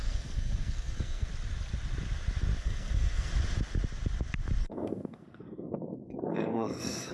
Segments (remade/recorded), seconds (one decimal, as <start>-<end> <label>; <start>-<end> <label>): 0.0-1.3 remade; 1.3-2.6 recorded; 2.6-3.3 remade; 3.3-4.6 recorded; 4.6-7.1 remade